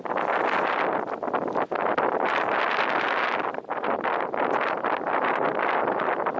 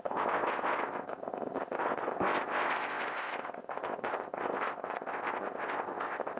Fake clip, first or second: second